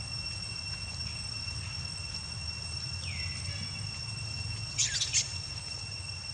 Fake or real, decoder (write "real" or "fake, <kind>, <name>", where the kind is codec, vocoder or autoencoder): real